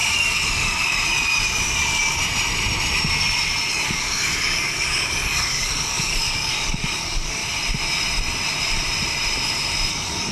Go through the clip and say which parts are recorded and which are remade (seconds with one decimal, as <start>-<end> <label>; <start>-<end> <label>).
0.0-2.2 remade; 2.2-3.7 recorded; 3.7-7.4 remade; 7.4-9.9 recorded; 9.9-10.3 remade